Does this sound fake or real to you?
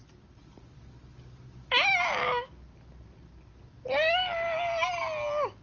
real